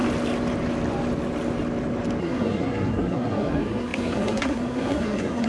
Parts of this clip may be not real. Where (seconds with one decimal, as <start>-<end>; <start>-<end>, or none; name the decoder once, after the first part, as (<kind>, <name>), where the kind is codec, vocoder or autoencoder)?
2.2-5.5 (codec, SNAC)